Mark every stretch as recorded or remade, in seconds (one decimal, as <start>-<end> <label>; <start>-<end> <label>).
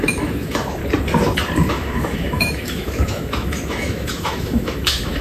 0.0-0.8 remade; 0.8-1.7 recorded; 1.7-5.2 remade